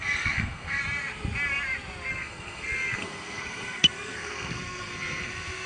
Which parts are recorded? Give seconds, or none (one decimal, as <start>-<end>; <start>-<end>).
0.8-2.1